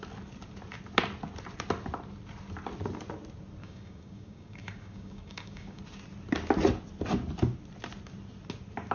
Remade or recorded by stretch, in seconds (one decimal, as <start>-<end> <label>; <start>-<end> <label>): 0.0-3.6 recorded; 3.6-5.8 remade; 5.8-8.9 recorded